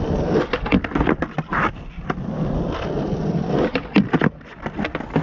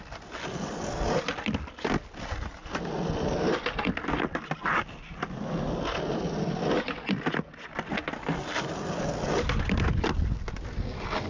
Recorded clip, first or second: second